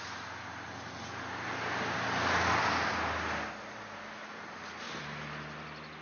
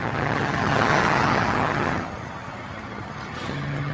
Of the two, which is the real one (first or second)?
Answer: first